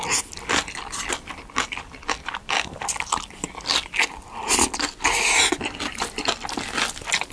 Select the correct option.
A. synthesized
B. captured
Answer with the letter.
B